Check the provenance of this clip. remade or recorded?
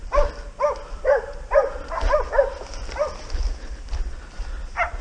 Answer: recorded